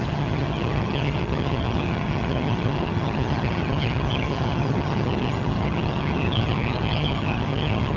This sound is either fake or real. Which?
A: fake